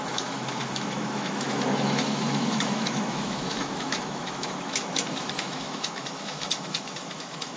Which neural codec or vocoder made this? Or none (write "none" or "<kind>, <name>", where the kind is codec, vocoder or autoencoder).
autoencoder, DAC-VAE